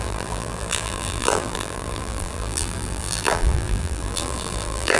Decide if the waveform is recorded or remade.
remade